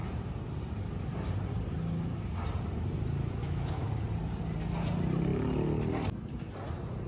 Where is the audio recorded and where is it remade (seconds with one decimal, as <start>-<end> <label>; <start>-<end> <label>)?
0.0-3.4 recorded; 3.4-3.9 remade; 3.9-7.1 recorded